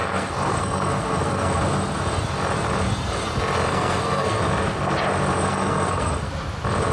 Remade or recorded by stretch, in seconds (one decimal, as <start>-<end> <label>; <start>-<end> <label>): 0.0-1.6 remade; 1.6-3.7 recorded; 3.7-4.4 remade; 4.4-5.5 recorded; 5.5-6.3 remade; 6.3-6.9 recorded